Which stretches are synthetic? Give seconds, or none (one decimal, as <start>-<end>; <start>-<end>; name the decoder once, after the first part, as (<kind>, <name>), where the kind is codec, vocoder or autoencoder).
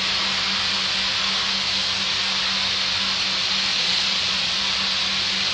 3.7-4.6 (vocoder, Vocos)